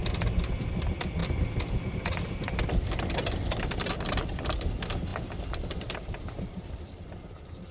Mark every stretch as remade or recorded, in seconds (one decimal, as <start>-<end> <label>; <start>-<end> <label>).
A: 0.0-7.7 recorded